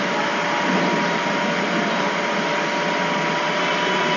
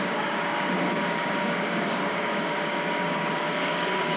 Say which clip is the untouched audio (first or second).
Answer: first